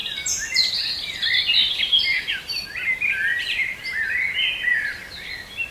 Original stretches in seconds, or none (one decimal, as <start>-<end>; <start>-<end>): 2.3-3.3; 4.1-5.7

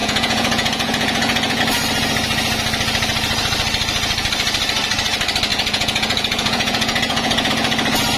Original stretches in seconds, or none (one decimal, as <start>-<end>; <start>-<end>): 1.6-5.5; 7.5-8.2

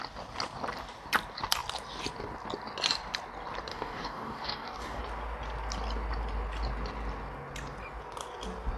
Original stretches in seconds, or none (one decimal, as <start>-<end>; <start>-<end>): 0.0-3.7; 5.0-8.8

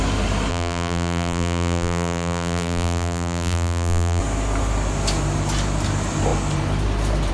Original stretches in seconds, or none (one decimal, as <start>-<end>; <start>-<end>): 0.0-0.5; 4.2-7.3

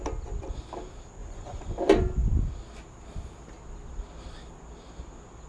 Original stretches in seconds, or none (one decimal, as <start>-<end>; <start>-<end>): 0.0-1.2; 1.7-5.5

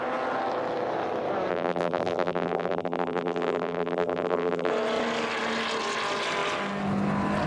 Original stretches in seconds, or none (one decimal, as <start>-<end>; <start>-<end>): 0.0-1.5; 4.7-7.5

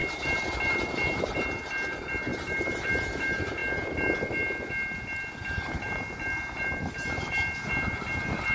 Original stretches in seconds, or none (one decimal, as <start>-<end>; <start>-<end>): 1.4-2.3; 2.9-8.5

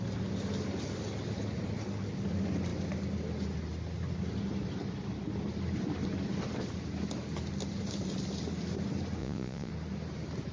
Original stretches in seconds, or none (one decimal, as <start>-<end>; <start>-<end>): 0.0-9.2; 9.7-10.5